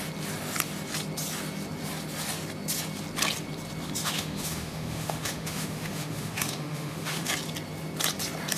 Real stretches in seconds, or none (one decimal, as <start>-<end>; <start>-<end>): 0.0-4.0; 7.3-8.6